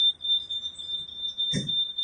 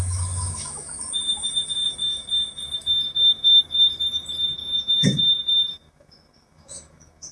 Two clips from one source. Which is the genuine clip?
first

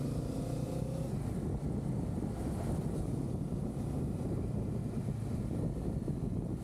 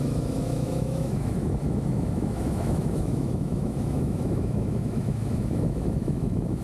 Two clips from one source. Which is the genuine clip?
first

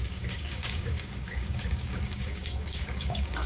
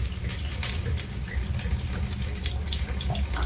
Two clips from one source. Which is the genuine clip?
second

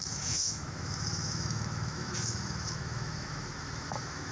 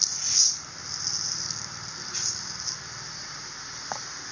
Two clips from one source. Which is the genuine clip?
second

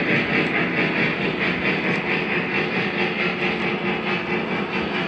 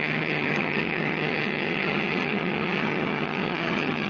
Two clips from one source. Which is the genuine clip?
first